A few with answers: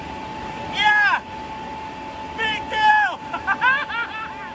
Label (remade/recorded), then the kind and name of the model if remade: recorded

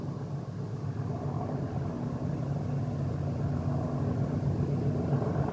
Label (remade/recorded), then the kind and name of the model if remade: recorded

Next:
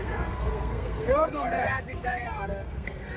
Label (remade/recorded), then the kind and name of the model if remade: remade, codec, SNAC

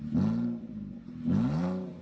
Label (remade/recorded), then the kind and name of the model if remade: recorded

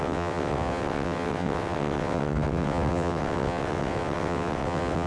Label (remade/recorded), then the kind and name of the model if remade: remade, vocoder, WaveNeXt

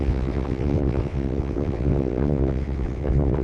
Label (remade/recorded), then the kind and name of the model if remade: remade, vocoder, WaveNeXt